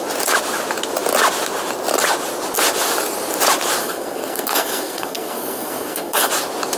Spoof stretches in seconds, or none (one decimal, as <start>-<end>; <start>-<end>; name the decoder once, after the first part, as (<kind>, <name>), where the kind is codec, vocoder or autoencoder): 3.8-6.3 (codec, SNAC)